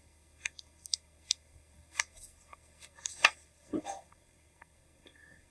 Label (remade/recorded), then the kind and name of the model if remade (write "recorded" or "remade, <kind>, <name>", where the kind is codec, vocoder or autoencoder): remade, codec, SNAC